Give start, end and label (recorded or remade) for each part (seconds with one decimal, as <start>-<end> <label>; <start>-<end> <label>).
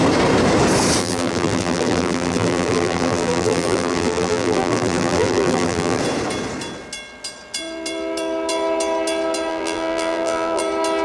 0.0-1.0 recorded; 1.0-6.0 remade; 6.0-9.5 recorded; 9.5-10.6 remade; 10.6-11.0 recorded